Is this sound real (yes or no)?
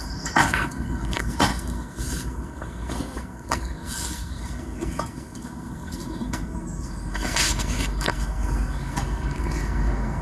no